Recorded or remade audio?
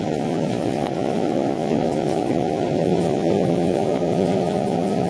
remade